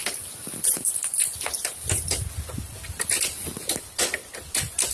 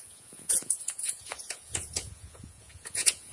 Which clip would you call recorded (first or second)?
first